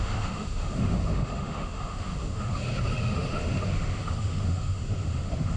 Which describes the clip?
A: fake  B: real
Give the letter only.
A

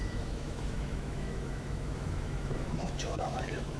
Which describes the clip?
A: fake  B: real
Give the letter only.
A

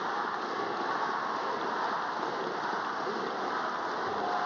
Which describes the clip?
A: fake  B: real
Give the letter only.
B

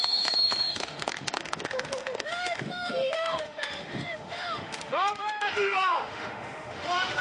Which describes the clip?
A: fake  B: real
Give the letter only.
A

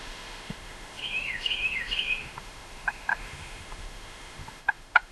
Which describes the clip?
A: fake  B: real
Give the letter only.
A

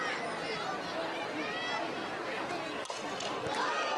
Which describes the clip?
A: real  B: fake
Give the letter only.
A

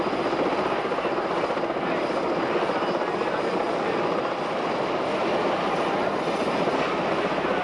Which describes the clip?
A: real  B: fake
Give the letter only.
A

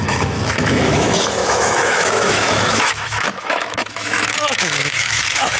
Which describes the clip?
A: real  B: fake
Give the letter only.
B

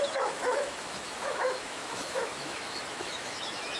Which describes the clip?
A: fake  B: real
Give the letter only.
A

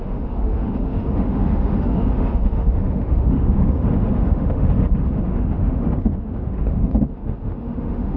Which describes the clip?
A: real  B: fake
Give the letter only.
B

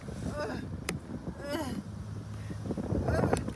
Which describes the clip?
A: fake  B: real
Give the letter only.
B